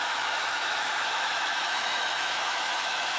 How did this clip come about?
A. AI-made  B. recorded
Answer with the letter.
A